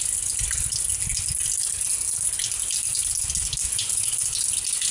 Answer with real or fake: real